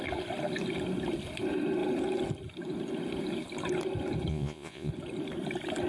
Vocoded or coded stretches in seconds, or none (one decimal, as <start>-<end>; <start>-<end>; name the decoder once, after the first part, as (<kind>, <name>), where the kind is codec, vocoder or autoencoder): 4.3-4.9 (vocoder, Vocos)